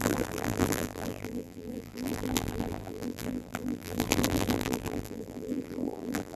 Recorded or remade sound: remade